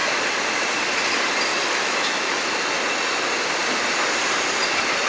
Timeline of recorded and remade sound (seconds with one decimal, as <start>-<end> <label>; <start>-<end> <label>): 0.0-1.5 recorded; 1.5-2.5 remade; 2.5-5.1 recorded